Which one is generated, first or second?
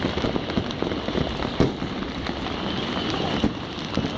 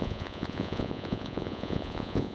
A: second